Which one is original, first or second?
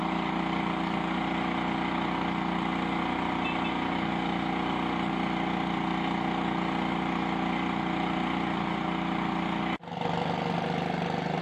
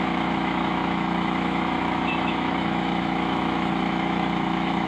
first